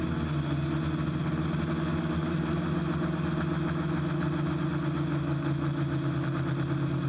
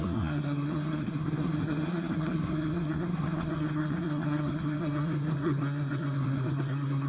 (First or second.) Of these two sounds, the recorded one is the first